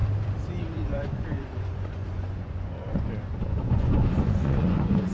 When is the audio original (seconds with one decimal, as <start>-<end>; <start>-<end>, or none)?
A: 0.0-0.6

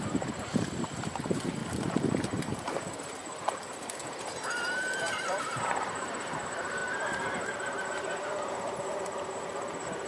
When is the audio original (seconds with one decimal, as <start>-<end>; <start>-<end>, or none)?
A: 1.6-2.2; 3.2-4.0; 6.8-7.3

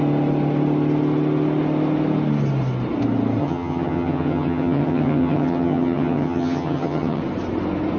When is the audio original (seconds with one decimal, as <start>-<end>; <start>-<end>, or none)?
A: 0.0-3.4; 7.2-8.0

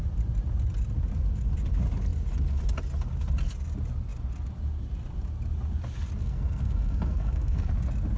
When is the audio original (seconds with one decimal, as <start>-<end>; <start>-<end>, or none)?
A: 0.0-6.2; 7.7-8.2

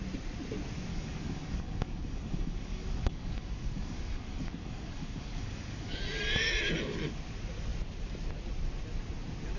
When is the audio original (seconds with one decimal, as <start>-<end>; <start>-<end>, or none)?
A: 0.0-0.9; 6.0-9.6

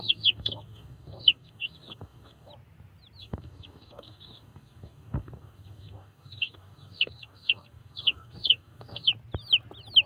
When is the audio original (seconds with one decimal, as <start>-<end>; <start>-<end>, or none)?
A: 2.5-3.2; 9.1-10.1

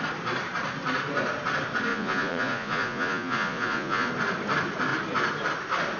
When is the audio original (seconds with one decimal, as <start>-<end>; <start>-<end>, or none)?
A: 0.0-1.9; 4.1-6.0

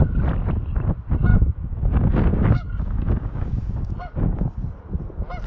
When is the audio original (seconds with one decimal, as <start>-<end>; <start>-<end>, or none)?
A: 0.0-1.3; 4.6-5.5